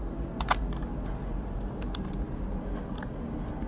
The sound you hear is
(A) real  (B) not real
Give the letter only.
A